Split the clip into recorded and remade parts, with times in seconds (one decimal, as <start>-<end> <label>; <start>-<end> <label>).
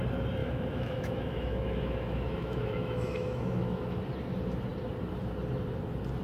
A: 0.0-0.4 recorded; 0.4-4.0 remade; 4.0-6.2 recorded